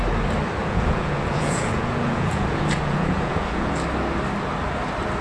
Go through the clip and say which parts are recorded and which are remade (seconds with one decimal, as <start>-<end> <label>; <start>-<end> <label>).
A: 0.0-0.6 recorded; 0.6-3.7 remade; 3.7-5.2 recorded